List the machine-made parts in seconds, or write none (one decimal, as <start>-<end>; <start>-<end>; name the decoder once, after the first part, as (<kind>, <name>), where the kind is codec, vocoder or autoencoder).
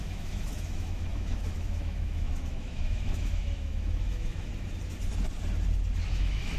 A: 0.0-4.5 (autoencoder, DAC-VAE); 6.1-6.6